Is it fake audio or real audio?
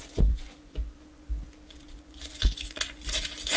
fake